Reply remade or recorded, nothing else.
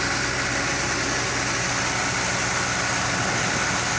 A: recorded